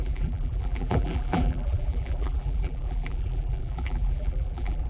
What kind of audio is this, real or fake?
fake